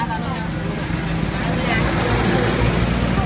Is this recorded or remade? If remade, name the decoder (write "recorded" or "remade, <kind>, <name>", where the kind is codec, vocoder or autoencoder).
recorded